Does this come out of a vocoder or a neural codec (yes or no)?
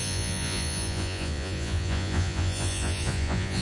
yes